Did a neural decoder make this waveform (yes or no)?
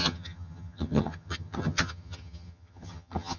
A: yes